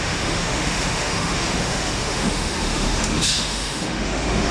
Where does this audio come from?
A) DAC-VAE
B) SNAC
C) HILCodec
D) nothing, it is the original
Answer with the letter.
A